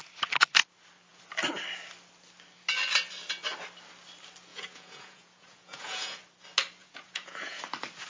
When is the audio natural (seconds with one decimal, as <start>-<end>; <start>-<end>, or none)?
0.0-4.5; 6.2-6.8; 7.6-8.1